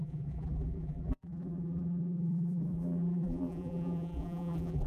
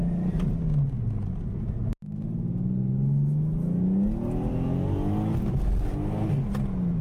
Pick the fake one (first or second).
first